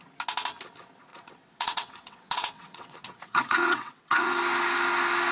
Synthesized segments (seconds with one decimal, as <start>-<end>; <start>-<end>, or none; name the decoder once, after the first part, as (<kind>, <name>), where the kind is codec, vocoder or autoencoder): 1.1-4.3 (vocoder, WaveNeXt)